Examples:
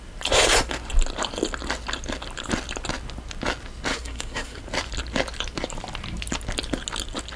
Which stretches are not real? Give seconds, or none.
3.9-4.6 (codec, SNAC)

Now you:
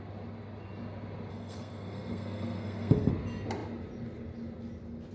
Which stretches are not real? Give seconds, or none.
1.3-3.1 (codec, SNAC)

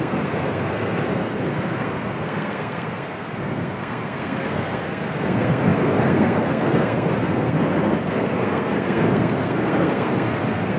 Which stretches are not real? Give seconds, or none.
0.0-10.8 (codec, SNAC)

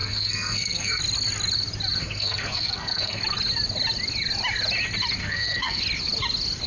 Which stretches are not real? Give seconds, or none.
0.0-1.0 (codec, SNAC); 2.0-3.2; 5.2-5.8

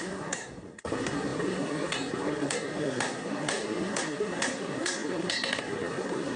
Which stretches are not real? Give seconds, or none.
0.0-6.4 (codec, SNAC)

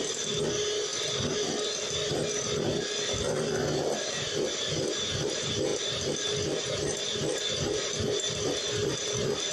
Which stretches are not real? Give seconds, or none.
none

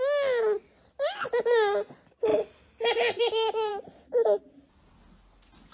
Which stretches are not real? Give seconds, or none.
none